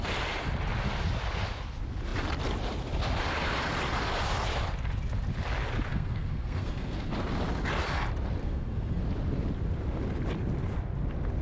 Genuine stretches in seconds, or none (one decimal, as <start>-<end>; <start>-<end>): 0.0-5.9; 7.1-8.4; 9.0-11.4